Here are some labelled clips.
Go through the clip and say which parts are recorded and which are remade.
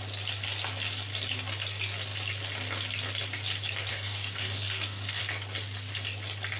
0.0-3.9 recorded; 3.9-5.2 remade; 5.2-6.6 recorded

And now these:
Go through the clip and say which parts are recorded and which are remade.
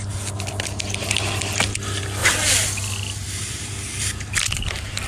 0.0-5.1 recorded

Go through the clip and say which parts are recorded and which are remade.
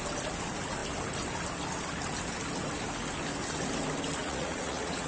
0.0-4.2 recorded; 4.2-5.1 remade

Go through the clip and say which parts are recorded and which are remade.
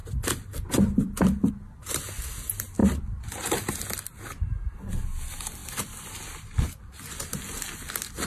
0.0-1.5 remade; 1.5-5.6 recorded; 5.6-6.1 remade; 6.1-8.3 recorded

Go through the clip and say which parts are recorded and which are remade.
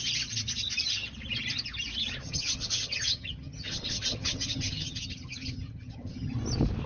0.0-2.2 recorded; 2.2-6.3 remade; 6.3-6.9 recorded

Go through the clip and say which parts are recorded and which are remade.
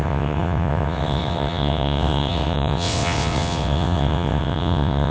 0.0-5.1 remade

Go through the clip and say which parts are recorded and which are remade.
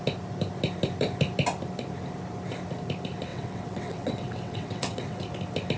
0.0-3.3 recorded; 3.3-5.2 remade; 5.2-5.8 recorded